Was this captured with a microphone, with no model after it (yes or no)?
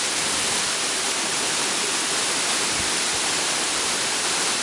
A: yes